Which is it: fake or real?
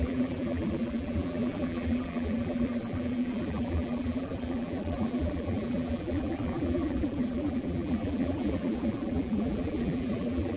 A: fake